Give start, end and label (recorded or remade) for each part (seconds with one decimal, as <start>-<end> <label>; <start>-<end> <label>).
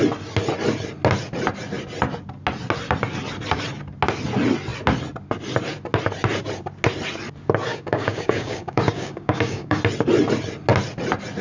0.0-7.7 recorded; 7.7-9.8 remade; 9.8-11.4 recorded